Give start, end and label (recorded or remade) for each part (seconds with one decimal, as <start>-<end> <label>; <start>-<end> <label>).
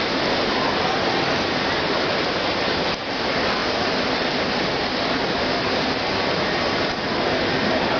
0.0-8.0 recorded